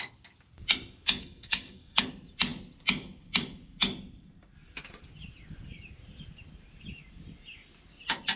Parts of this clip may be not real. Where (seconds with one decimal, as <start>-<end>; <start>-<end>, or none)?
1.2-2.0